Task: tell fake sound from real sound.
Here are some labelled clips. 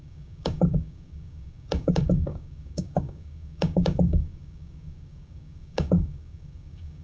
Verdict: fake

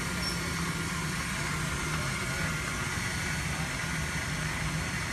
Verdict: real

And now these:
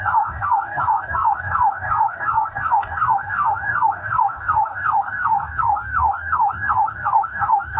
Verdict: fake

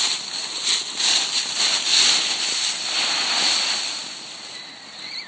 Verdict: real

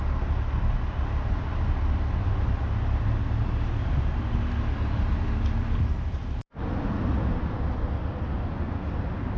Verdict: real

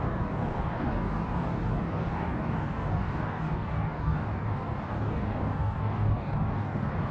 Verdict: fake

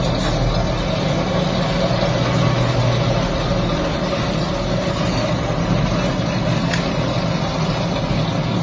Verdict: real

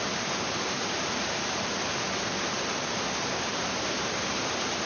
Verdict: real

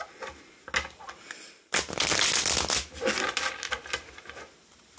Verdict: real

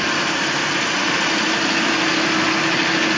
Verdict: real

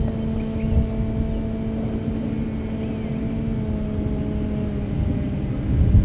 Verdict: real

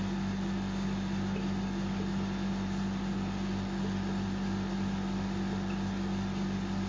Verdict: real